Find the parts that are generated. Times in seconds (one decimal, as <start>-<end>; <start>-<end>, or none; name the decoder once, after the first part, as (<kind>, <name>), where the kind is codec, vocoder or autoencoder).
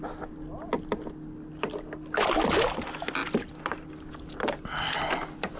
none